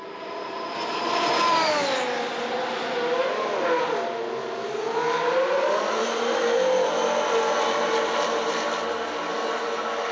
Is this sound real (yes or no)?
yes